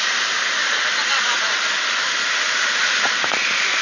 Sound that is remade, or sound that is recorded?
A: recorded